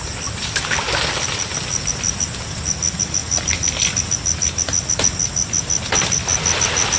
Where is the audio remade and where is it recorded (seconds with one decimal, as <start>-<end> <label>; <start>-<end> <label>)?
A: 0.0-7.0 recorded